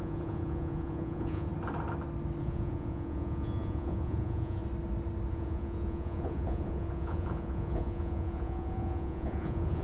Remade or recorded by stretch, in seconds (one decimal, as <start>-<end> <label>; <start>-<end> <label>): 0.0-1.5 remade; 1.5-2.4 recorded; 2.4-4.6 remade; 4.6-5.3 recorded; 5.3-9.8 remade